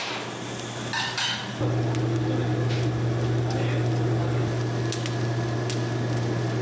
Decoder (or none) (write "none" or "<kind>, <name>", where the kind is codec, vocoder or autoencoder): none